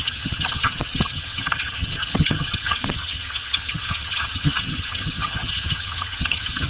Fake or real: fake